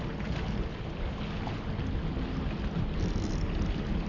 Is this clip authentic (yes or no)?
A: yes